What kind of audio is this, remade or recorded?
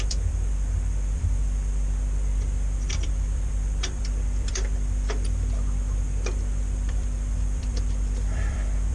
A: remade